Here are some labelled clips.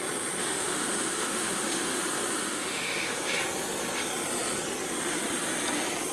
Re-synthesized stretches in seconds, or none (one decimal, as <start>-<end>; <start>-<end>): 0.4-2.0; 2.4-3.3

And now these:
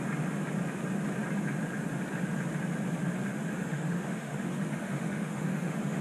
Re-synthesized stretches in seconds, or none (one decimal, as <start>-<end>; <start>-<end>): 3.3-6.0

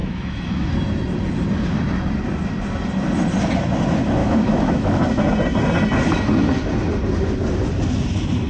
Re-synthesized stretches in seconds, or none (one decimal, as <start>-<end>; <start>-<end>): 0.0-0.7; 4.2-5.0

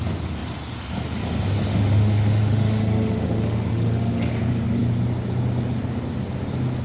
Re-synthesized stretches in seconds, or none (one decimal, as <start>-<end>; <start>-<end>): 1.7-4.3